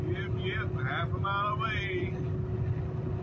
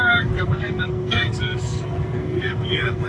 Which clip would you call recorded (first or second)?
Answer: first